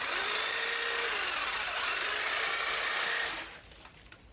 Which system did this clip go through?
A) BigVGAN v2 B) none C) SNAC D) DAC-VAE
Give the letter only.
A